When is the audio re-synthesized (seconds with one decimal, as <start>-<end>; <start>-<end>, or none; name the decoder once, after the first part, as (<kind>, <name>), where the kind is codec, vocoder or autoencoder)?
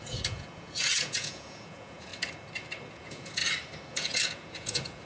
0.0-2.1 (vocoder, Vocos); 2.9-3.4; 3.9-5.1